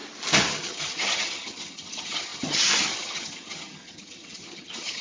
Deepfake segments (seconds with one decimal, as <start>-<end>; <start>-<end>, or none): 0.5-5.0